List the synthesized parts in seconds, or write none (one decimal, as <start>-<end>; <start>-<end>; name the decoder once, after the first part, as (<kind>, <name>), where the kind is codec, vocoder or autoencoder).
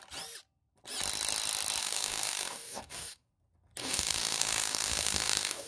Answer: 1.8-3.3 (codec, DAC); 3.8-5.7